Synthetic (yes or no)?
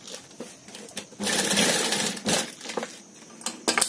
no